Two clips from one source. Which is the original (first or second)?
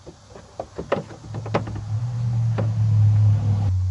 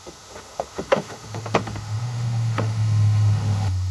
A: first